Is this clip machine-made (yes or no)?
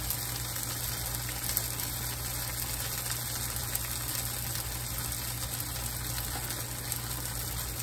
no